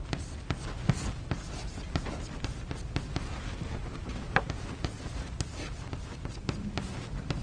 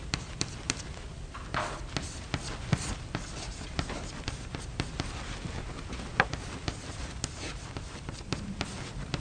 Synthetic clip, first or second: second